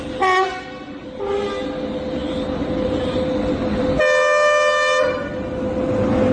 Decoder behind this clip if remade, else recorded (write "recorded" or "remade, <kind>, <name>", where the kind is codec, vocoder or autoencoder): recorded